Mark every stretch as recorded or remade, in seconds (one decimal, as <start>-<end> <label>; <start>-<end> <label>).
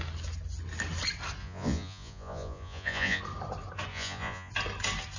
0.0-1.4 recorded; 1.4-3.2 remade; 3.2-3.9 recorded; 3.9-4.5 remade; 4.5-5.2 recorded